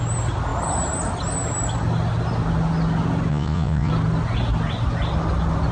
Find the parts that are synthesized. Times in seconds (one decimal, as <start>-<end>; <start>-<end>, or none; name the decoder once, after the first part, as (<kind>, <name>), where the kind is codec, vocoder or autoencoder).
3.3-3.9 (vocoder, Vocos)